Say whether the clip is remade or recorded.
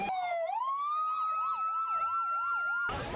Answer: recorded